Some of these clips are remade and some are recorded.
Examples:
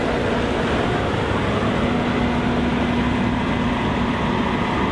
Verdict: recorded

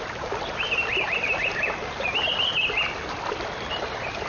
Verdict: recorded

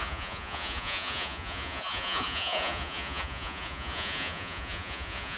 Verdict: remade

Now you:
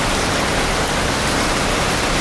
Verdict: recorded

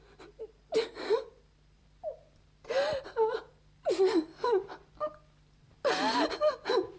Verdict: recorded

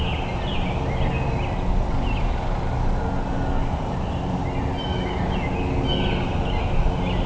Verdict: recorded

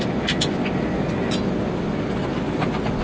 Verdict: recorded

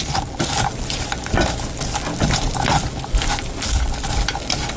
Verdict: recorded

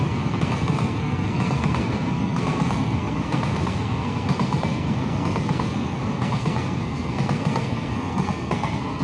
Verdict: remade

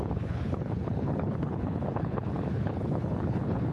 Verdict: remade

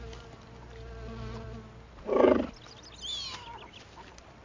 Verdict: recorded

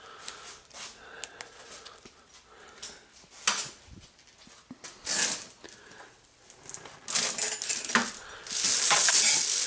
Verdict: recorded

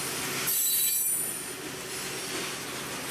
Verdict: recorded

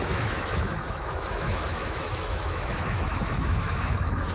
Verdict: remade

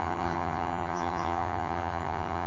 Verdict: remade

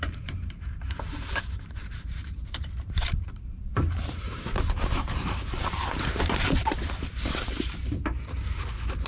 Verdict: remade